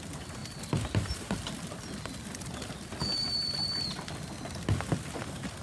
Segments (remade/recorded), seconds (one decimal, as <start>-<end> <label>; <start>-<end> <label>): 0.0-0.4 recorded; 0.4-3.8 remade; 3.8-5.6 recorded